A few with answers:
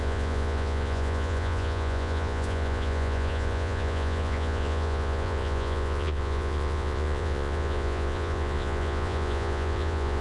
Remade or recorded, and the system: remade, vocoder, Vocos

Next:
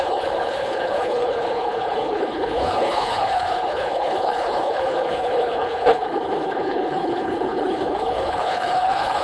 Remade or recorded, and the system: remade, codec, HILCodec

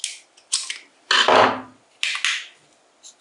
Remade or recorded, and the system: recorded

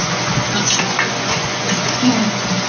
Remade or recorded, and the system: remade, vocoder, Vocos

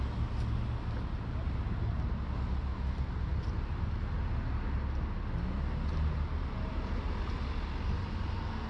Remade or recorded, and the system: recorded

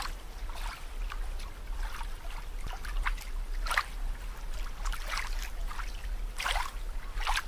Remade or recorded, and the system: recorded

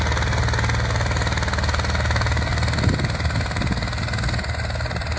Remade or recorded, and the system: recorded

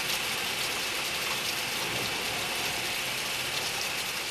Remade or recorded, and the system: recorded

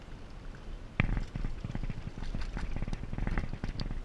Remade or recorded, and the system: recorded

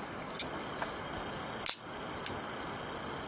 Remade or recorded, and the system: recorded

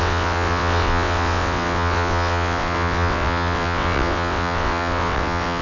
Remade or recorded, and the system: remade, vocoder, WaveNeXt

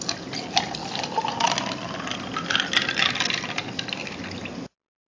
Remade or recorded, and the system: recorded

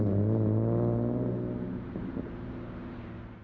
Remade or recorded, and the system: recorded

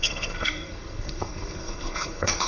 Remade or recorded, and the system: remade, codec, SNAC